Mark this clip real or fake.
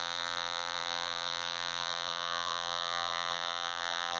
fake